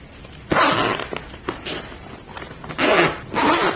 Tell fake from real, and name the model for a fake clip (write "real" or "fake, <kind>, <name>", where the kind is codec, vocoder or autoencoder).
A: real